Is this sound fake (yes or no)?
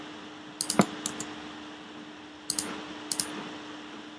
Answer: no